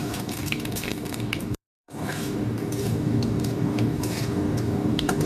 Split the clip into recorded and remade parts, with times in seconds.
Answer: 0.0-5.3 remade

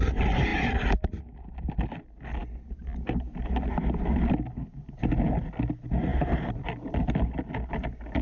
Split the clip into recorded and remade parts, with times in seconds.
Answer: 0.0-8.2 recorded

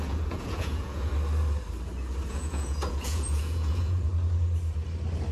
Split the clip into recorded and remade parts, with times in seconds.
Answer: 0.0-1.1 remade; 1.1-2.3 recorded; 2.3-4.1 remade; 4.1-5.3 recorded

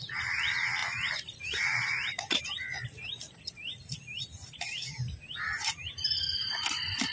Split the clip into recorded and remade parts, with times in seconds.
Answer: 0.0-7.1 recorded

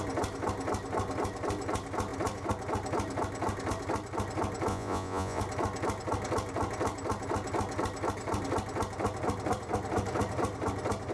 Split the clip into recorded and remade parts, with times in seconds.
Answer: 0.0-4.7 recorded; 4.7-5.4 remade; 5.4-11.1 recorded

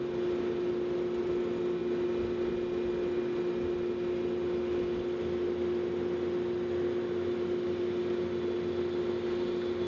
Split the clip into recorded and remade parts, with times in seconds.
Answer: 0.0-9.9 recorded